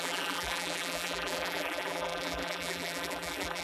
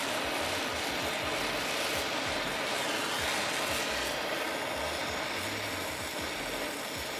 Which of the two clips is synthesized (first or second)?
first